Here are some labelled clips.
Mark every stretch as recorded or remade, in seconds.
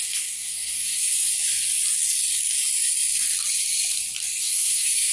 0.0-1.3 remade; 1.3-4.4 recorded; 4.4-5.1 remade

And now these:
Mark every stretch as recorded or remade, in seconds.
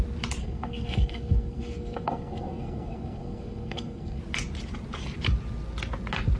0.0-0.4 recorded; 0.4-4.2 remade; 4.2-6.4 recorded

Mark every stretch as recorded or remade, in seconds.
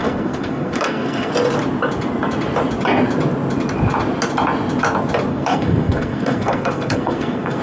0.0-1.3 remade; 1.3-5.3 recorded; 5.3-7.6 remade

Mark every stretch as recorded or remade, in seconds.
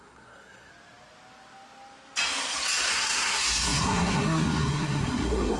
0.0-0.7 remade; 0.7-2.9 recorded; 2.9-5.6 remade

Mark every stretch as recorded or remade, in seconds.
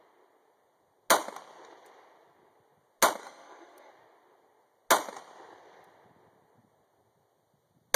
0.0-3.2 recorded; 3.2-3.9 remade; 3.9-8.0 recorded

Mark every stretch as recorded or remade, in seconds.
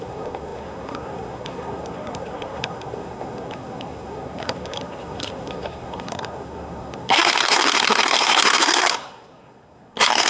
0.0-10.3 remade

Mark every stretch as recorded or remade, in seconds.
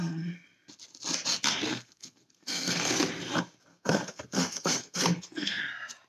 0.0-1.6 recorded; 1.6-2.9 remade; 2.9-3.7 recorded; 3.7-5.6 remade; 5.6-6.1 recorded